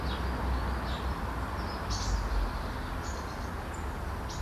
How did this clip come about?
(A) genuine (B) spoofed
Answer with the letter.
A